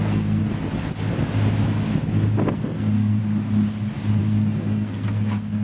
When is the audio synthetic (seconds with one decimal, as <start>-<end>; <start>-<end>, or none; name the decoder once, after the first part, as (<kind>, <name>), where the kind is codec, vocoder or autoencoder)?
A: 0.0-0.4 (codec, SNAC); 2.5-3.2; 4.2-5.6